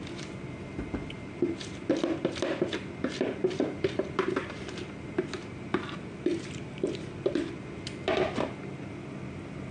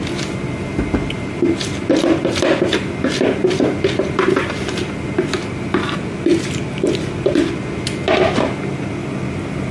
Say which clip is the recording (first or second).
second